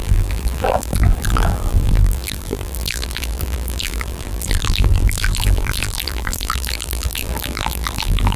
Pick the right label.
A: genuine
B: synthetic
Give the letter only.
B